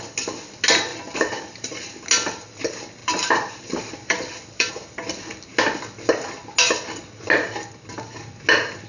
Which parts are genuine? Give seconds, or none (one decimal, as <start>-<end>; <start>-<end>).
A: 0.0-0.9; 2.0-3.0; 4.7-8.9